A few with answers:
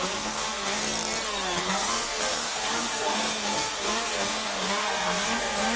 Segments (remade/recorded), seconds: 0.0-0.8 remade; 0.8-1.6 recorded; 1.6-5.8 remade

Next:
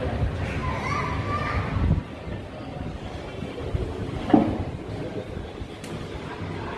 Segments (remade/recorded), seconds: 0.0-0.6 recorded; 0.6-2.5 remade; 2.5-6.8 recorded